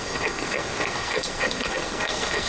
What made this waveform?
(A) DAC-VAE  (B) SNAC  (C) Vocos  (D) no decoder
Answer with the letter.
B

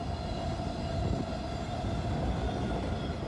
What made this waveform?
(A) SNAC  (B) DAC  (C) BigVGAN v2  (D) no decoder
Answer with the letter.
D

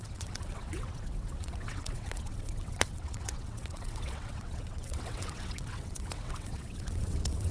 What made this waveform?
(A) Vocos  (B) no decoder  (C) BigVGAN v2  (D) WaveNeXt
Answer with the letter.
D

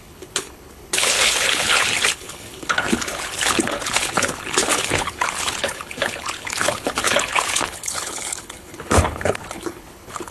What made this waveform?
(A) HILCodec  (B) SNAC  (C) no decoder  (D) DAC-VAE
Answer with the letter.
A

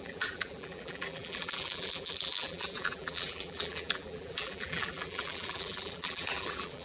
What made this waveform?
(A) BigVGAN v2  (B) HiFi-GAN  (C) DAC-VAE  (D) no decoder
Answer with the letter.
A